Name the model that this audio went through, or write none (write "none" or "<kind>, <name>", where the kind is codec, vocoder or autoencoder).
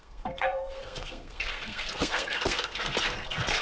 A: codec, SNAC